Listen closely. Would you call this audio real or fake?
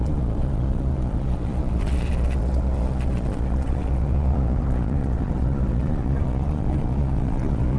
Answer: fake